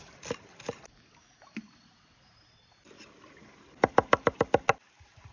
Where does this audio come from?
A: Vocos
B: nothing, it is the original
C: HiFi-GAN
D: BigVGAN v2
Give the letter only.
B